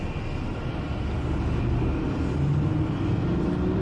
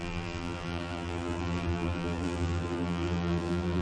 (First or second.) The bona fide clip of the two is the first